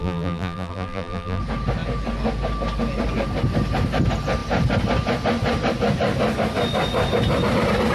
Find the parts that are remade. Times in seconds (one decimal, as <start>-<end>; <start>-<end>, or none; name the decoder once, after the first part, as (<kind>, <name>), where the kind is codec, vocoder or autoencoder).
0.0-1.4 (vocoder, BigVGAN v2)